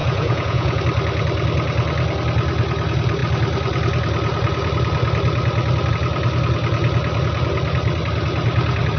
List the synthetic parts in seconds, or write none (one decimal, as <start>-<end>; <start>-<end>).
0.0-0.8

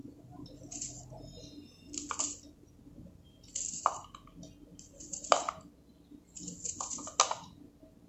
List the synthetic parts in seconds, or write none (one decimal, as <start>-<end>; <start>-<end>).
none

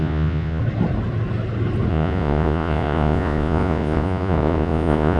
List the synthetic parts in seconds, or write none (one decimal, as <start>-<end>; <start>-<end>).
0.0-0.6; 1.9-5.2

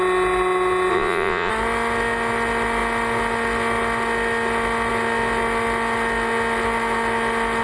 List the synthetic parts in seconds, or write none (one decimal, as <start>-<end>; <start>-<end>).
0.9-1.5

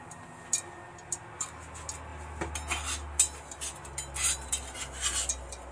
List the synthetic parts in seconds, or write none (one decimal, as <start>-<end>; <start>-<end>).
none

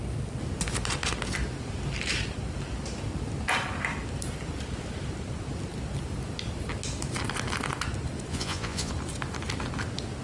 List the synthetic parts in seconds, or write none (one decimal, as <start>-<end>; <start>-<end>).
8.3-8.9

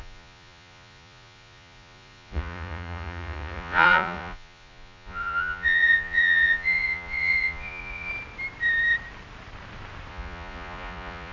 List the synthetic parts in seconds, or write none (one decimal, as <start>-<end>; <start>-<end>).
0.0-8.1; 10.1-11.3

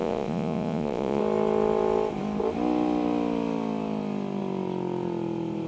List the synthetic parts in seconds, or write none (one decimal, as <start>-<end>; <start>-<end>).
0.0-1.2